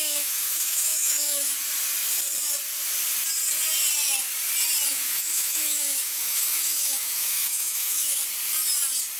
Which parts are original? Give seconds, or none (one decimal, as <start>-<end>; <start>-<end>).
1.5-4.9; 8.2-9.2